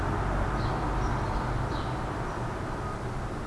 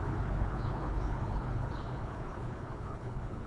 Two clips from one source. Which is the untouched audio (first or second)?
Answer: first